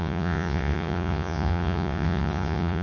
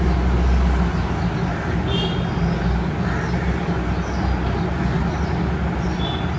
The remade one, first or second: first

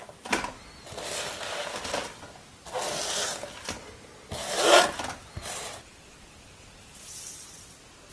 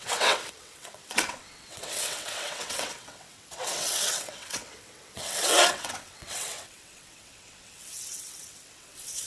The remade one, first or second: second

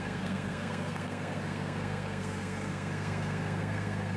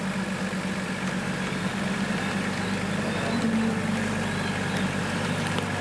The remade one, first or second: first